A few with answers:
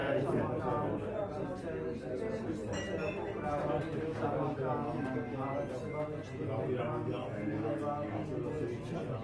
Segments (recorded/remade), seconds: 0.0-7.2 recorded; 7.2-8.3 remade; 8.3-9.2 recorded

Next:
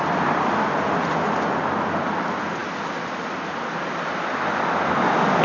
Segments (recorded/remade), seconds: 0.0-5.4 recorded

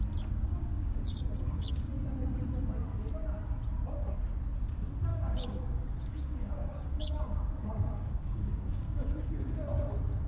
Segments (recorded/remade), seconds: 0.0-0.7 recorded; 0.7-1.9 remade; 1.9-5.1 recorded; 5.1-9.6 remade; 9.6-10.3 recorded

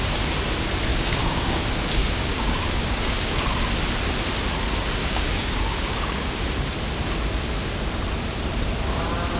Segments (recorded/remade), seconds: 0.0-0.9 recorded; 0.9-1.6 remade; 1.6-2.0 recorded; 2.0-3.5 remade; 3.5-5.0 recorded; 5.0-6.4 remade; 6.4-9.4 recorded

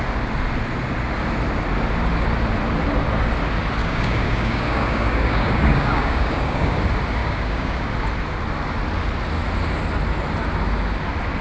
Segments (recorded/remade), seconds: 0.0-3.8 recorded; 3.8-6.8 remade; 6.8-7.2 recorded; 7.2-7.9 remade; 7.9-11.4 recorded

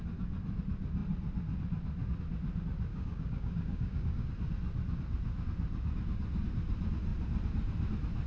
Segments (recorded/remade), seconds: 0.0-2.9 recorded; 2.9-4.3 remade; 4.3-8.3 recorded